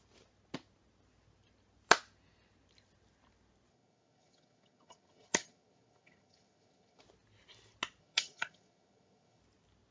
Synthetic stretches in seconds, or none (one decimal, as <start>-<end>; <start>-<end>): 3.7-7.0; 8.0-9.4